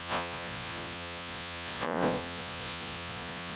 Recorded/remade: remade